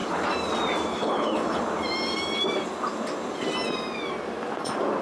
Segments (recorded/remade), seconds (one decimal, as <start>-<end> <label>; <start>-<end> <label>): 0.0-0.9 recorded; 0.9-1.6 remade; 1.6-5.0 recorded